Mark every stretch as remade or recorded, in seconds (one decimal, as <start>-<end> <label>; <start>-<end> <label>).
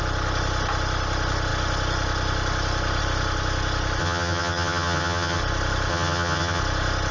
0.0-4.0 recorded; 4.0-5.4 remade; 5.4-5.9 recorded; 5.9-6.6 remade; 6.6-7.1 recorded